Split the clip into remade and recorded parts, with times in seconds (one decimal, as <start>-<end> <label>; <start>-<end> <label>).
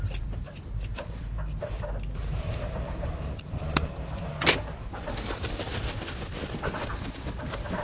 0.0-0.9 recorded; 0.9-1.5 remade; 1.5-2.2 recorded; 2.2-5.7 remade; 5.7-7.8 recorded